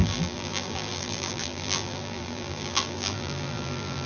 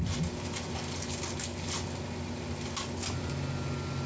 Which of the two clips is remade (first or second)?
first